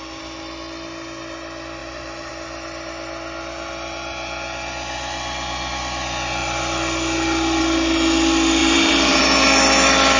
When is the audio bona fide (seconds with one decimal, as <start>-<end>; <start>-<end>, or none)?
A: 0.0-1.8; 2.3-8.6; 9.2-10.2